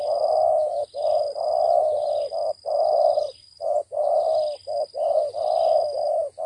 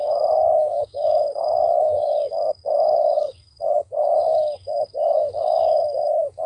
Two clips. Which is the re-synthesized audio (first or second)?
second